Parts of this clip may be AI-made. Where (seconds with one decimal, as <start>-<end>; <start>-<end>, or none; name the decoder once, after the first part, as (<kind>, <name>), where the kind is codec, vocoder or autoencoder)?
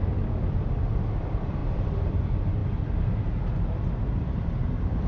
0.0-2.6 (vocoder, BigVGAN v2); 4.6-5.1